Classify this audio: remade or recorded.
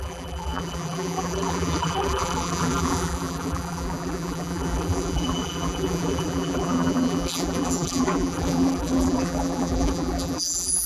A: remade